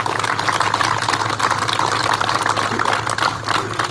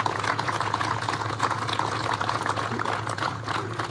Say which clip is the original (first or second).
first